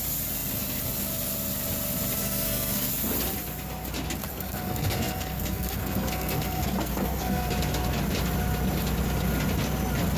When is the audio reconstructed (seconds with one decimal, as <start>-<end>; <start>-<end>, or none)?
2.2-2.9; 4.3-7.5